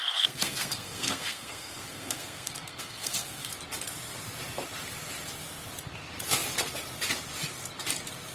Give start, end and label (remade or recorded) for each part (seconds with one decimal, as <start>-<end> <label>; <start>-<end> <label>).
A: 0.0-3.5 remade; 3.5-8.3 recorded